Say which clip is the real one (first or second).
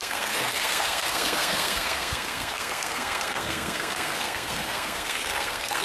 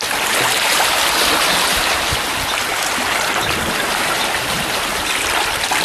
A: second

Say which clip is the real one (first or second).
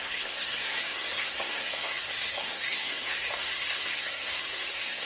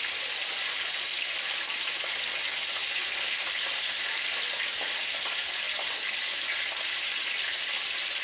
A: second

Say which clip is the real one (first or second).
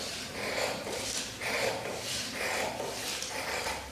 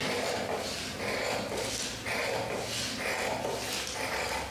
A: second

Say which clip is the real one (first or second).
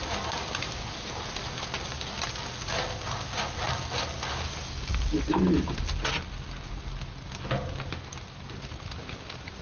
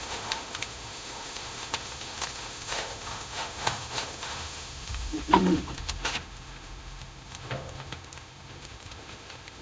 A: first